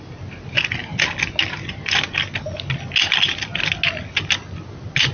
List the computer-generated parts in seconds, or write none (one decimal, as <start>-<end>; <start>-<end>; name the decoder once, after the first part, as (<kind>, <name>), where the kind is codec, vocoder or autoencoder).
none